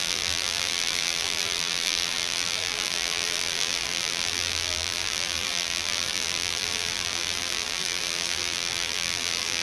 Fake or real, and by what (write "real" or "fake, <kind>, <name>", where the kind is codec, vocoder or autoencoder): fake, vocoder, BigVGAN v2